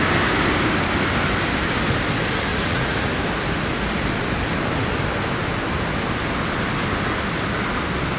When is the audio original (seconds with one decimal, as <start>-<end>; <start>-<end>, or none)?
0.0-2.5; 3.1-8.2